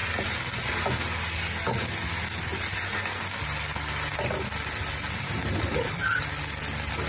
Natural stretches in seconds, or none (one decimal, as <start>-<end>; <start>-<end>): 0.0-7.1